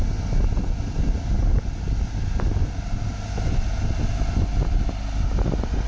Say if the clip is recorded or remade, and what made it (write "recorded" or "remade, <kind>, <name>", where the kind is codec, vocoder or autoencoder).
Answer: recorded